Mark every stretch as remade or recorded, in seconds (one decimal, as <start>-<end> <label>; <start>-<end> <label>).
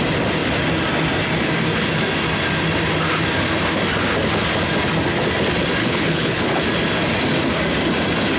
0.0-5.8 recorded; 5.8-6.6 remade; 6.6-8.4 recorded